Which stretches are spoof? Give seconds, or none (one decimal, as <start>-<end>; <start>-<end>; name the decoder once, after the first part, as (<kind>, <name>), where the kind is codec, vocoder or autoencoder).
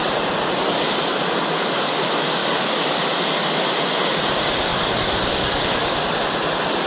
2.4-3.0 (codec, DAC); 4.7-6.2